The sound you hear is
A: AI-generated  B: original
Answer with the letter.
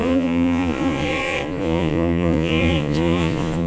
A